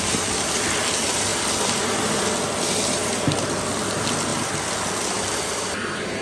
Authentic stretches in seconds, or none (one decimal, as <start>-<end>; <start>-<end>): 0.0-6.2

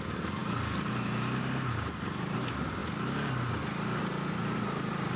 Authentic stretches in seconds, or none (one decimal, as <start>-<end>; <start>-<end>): 0.0-5.2

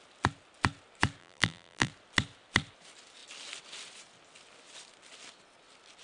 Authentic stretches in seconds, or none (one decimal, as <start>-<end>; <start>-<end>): 0.0-1.2; 1.9-6.0

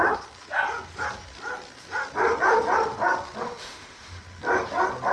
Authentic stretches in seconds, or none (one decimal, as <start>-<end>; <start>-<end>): 0.0-3.4; 4.2-5.1

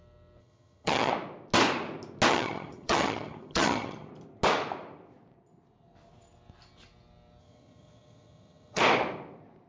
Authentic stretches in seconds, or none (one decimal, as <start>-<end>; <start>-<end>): 0.0-0.4; 1.1-2.3; 4.1-7.4; 8.8-9.7

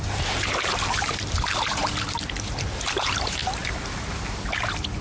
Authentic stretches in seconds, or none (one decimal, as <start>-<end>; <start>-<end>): 1.8-2.7

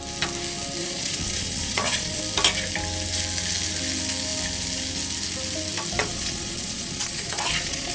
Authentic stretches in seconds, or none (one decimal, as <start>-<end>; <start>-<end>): 0.0-0.8; 2.2-6.0

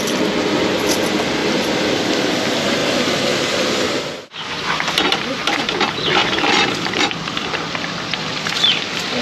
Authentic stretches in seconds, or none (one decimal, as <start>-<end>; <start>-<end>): 0.0-6.2; 8.4-9.2